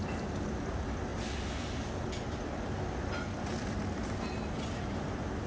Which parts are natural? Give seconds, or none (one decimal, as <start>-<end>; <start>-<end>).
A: 0.0-5.5